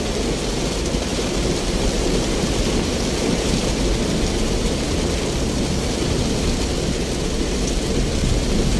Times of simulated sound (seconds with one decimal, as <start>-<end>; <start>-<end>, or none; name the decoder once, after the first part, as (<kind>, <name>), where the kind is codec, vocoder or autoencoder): none